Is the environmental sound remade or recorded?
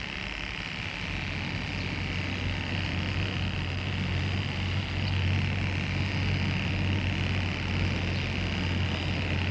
recorded